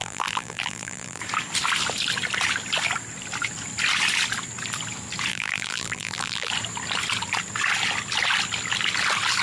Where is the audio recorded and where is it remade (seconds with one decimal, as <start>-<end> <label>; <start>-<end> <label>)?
0.0-1.2 remade; 1.2-5.3 recorded; 5.3-6.5 remade; 6.5-9.4 recorded